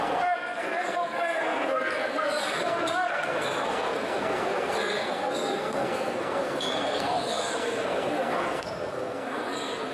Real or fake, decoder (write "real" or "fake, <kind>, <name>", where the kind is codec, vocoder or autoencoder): fake, codec, SNAC